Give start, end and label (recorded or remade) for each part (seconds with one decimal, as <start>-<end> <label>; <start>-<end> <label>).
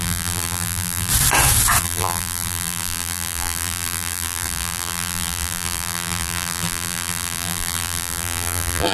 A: 0.0-1.1 remade; 1.1-1.8 recorded; 1.8-8.9 remade